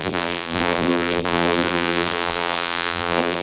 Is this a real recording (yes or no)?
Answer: no